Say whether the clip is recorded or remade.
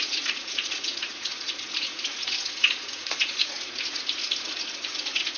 remade